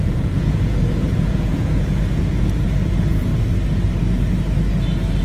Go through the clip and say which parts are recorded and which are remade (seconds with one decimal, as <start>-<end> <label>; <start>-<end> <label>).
0.0-3.3 remade; 3.3-5.2 recorded